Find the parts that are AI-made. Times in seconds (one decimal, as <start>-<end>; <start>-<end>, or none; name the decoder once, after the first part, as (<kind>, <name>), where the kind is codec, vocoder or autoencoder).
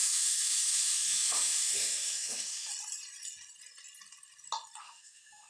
0.0-2.7 (autoencoder, DAC-VAE); 4.8-5.5